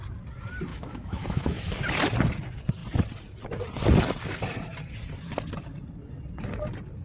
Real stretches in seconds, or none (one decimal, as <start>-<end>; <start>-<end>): 0.0-0.7; 1.8-7.0